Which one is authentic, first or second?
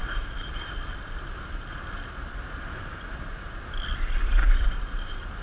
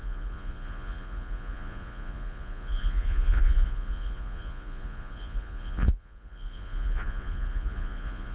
first